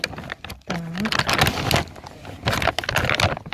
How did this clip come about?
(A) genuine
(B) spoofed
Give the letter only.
A